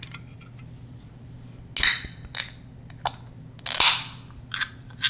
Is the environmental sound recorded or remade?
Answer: recorded